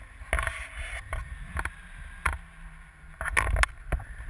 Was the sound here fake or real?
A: real